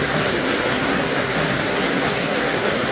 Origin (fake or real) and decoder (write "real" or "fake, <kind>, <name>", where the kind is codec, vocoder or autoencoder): fake, codec, SNAC